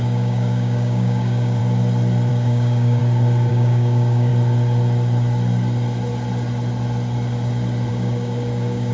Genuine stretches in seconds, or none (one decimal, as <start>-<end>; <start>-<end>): 1.6-2.3; 3.0-3.5; 4.3-7.9